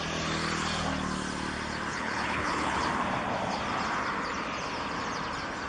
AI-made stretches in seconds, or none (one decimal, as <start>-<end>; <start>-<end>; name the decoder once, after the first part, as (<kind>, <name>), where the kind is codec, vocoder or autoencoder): 1.9-2.8 (codec, HILCodec)